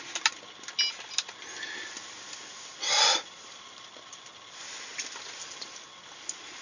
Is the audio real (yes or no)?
yes